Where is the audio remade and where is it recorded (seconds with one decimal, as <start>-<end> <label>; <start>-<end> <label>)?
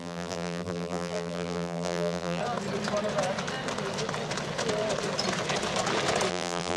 0.0-2.4 remade; 2.4-6.3 recorded; 6.3-6.8 remade